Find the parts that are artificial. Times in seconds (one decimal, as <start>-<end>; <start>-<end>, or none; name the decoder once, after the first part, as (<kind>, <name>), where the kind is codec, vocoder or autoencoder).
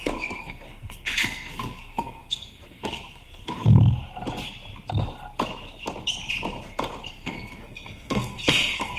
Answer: 0.0-3.8 (codec, SNAC); 7.1-9.0